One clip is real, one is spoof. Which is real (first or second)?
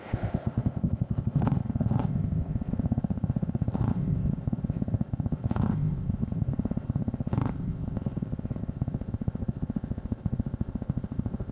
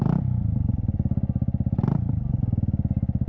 second